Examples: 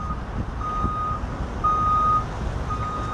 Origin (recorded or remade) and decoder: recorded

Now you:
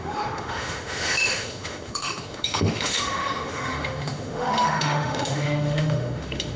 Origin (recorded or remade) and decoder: remade, autoencoder, DAC-VAE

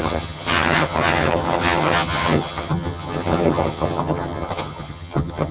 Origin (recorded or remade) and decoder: remade, vocoder, HiFi-GAN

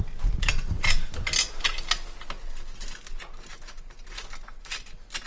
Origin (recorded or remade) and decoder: recorded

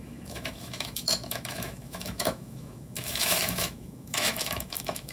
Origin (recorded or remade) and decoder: remade, autoencoder, DAC-VAE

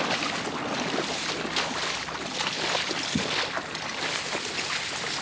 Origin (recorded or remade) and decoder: recorded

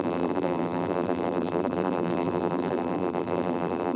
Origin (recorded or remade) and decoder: remade, vocoder, BigVGAN v2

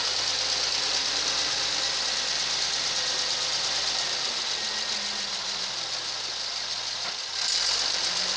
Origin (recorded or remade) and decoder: recorded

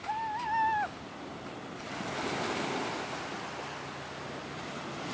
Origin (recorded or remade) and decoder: recorded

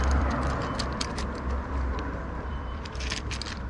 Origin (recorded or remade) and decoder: remade, vocoder, BigVGAN v2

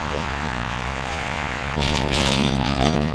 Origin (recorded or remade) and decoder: remade, vocoder, Vocos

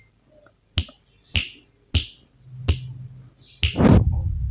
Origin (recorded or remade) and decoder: recorded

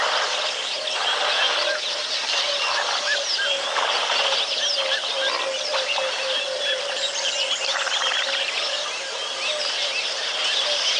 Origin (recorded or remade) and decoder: recorded